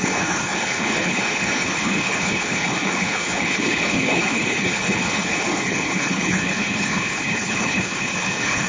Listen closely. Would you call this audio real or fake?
fake